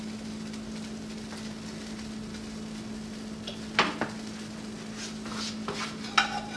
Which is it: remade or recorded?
recorded